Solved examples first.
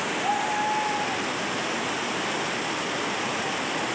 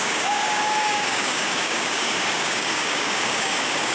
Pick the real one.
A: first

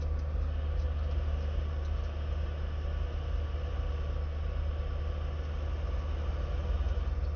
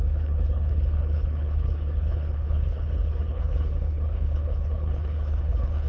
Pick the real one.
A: first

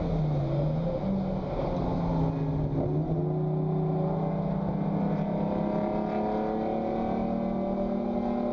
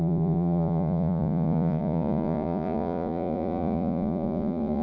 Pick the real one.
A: first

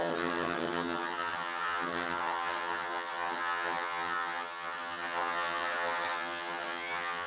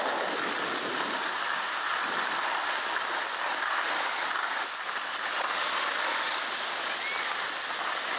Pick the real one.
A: second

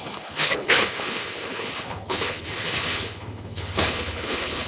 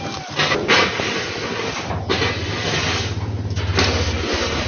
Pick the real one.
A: second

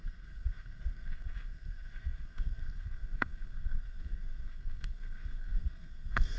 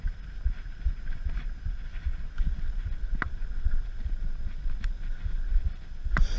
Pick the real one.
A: second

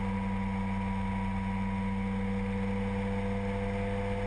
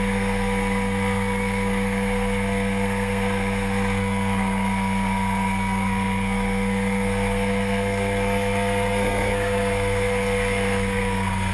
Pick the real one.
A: first